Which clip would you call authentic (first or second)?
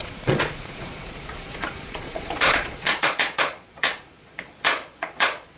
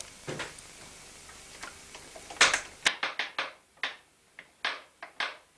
second